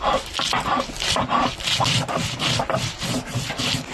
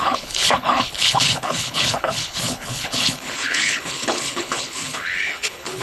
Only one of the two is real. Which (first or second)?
first